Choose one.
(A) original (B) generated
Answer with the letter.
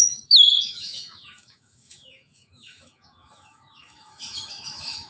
B